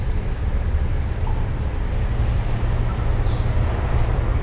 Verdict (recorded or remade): recorded